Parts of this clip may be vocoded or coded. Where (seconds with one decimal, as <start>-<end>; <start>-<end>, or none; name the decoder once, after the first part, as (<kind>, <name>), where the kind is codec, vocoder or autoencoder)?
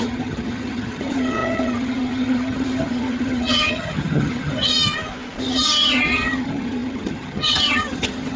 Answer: 0.0-4.7 (vocoder, HiFi-GAN); 5.4-8.4